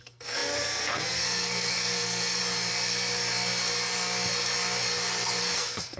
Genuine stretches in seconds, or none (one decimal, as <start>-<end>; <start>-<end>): 2.4-5.4